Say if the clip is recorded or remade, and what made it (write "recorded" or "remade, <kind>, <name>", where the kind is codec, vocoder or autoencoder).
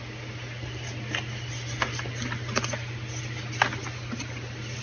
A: recorded